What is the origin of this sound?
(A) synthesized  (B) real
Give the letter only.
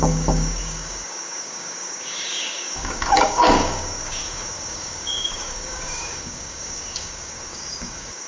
A